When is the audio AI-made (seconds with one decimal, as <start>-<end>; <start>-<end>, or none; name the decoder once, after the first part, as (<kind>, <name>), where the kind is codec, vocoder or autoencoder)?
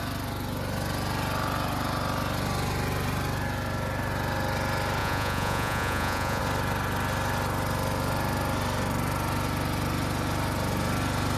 5.0-6.4 (vocoder, Vocos)